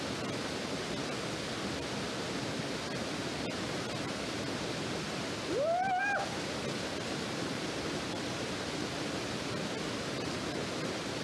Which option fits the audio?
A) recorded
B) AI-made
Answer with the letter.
A